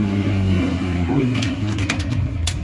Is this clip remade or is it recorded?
remade